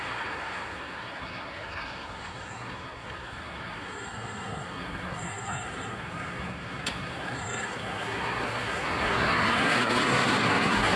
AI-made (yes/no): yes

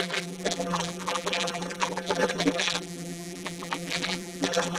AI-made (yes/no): yes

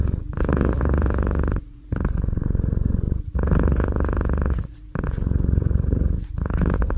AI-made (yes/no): yes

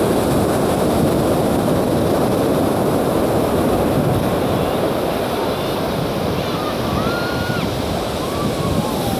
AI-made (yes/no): yes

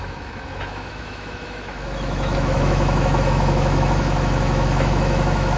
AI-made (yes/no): yes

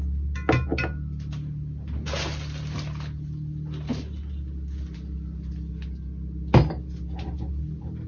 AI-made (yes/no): no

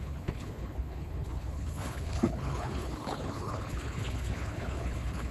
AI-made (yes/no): yes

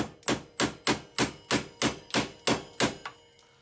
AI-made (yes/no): no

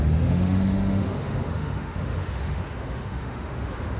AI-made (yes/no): yes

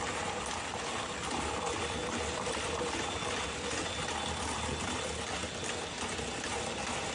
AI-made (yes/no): no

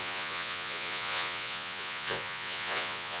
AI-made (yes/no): yes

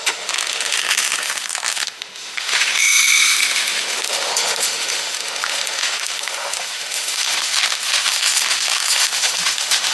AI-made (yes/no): yes